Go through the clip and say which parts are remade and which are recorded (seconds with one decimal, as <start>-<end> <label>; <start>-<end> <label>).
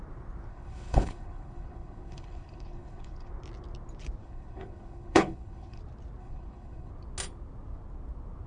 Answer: 0.0-0.5 recorded; 0.5-3.3 remade; 3.3-4.2 recorded; 4.2-5.8 remade; 5.8-6.2 recorded; 6.2-6.9 remade; 6.9-8.5 recorded